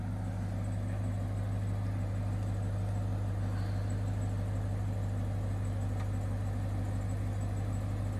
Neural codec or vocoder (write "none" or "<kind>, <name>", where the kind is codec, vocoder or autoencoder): none